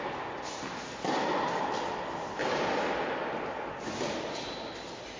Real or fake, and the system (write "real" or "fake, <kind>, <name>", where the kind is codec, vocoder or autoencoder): real